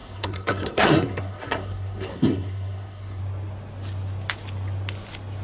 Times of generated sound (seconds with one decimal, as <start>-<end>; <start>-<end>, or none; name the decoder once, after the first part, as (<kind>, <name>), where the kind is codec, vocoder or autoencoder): 0.0-3.2 (codec, SNAC)